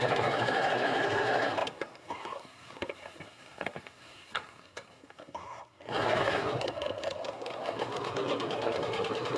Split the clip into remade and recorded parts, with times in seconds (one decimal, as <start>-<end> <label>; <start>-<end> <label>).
0.0-9.4 remade